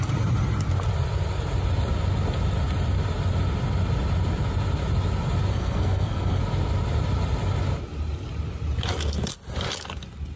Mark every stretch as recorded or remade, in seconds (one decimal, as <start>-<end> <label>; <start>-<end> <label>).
0.0-5.5 recorded; 5.5-6.4 remade; 6.4-10.4 recorded